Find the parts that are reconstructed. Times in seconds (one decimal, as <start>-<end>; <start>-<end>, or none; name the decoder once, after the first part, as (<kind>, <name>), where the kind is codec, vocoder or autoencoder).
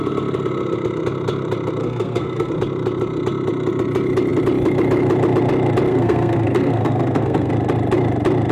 1.8-2.5 (codec, SNAC); 5.9-7.5